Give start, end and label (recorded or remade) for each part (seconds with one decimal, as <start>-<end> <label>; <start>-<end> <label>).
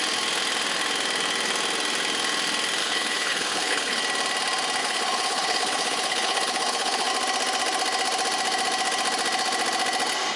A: 0.0-2.8 recorded; 2.8-4.0 remade; 4.0-4.8 recorded; 4.8-7.1 remade; 7.1-10.4 recorded